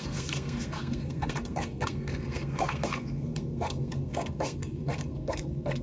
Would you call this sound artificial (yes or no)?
yes